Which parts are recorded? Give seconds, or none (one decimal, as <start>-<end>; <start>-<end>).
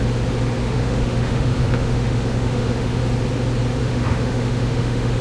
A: 0.0-0.6; 3.0-3.8